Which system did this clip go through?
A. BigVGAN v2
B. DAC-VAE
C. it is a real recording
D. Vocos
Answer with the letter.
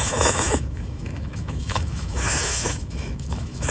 B